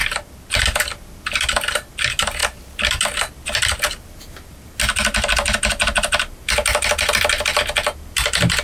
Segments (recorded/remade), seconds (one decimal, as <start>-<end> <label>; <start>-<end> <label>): 0.0-8.6 recorded